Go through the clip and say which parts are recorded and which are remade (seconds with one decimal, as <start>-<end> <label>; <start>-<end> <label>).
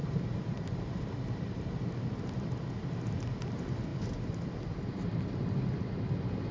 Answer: 0.0-1.9 remade; 1.9-6.5 recorded